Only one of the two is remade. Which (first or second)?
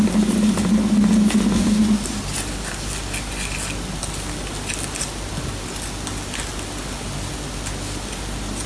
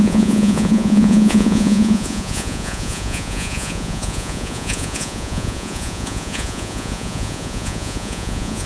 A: second